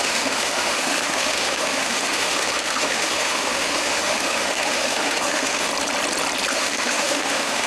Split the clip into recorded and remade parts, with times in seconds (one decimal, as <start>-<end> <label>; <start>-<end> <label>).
0.0-5.7 remade; 5.7-6.5 recorded; 6.5-7.7 remade